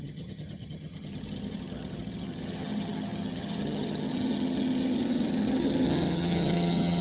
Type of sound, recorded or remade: remade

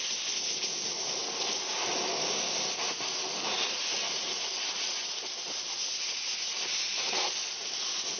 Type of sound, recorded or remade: recorded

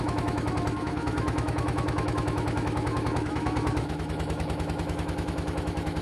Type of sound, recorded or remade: remade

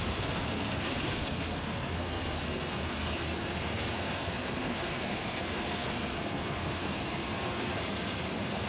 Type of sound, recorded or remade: remade